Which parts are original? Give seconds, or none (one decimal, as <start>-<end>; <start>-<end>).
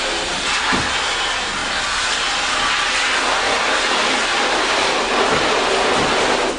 0.0-6.6